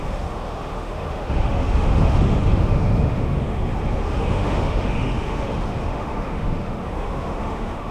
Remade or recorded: remade